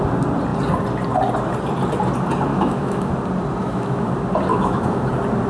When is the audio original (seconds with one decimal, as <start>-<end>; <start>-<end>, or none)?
0.0-2.5; 3.1-3.6; 4.1-4.5; 5.1-5.5